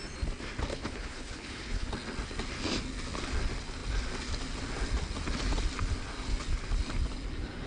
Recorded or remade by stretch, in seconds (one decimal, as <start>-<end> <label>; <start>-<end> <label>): 0.0-0.7 recorded; 0.7-1.9 remade; 1.9-7.7 recorded

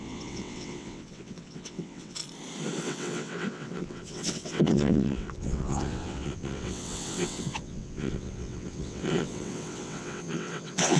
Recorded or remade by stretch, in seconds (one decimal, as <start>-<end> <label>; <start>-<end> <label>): 0.0-2.2 remade; 2.2-2.8 recorded; 2.8-11.0 remade

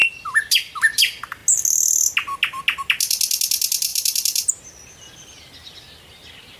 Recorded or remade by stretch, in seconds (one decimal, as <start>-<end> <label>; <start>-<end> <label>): 0.0-6.6 recorded

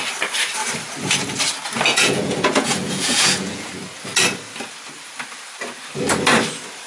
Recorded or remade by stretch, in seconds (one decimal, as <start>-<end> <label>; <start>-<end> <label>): 0.0-1.9 recorded; 1.9-3.7 remade; 3.7-6.9 recorded

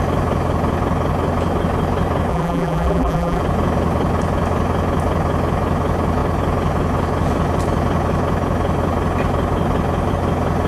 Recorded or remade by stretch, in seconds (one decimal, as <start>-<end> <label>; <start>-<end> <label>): 0.0-2.3 recorded; 2.3-3.4 remade; 3.4-10.7 recorded